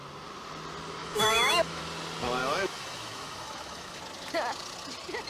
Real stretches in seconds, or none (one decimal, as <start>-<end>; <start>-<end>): 0.0-1.0; 1.8-2.4; 4.0-5.3